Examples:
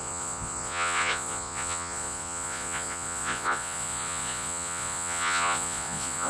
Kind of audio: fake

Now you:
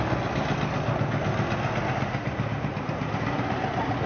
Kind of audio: real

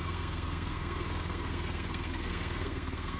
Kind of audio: fake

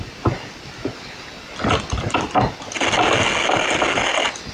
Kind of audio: real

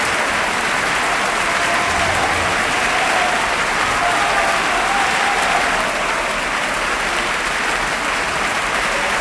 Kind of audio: real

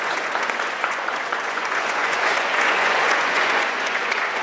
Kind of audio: fake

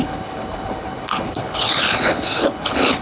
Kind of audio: fake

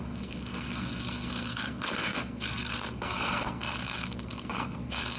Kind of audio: fake